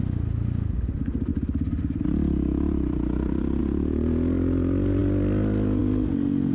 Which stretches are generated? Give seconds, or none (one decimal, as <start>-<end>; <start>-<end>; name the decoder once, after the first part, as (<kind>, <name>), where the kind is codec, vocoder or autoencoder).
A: 1.3-3.6 (vocoder, BigVGAN v2)